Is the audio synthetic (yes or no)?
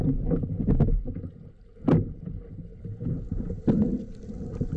no